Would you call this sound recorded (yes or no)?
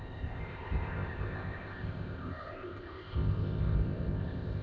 no